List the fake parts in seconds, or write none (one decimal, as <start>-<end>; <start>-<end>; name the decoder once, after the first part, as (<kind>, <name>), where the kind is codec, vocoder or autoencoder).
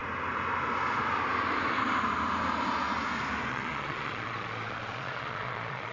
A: 3.5-5.9 (vocoder, Vocos)